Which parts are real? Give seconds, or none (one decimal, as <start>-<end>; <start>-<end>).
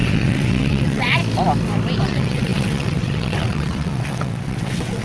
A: 1.2-2.0